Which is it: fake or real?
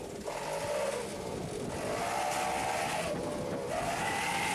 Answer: real